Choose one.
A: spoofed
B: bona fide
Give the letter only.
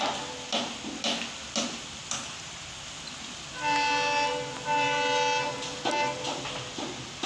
B